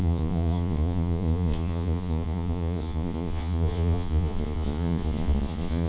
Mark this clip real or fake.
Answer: fake